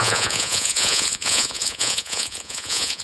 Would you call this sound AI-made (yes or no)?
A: yes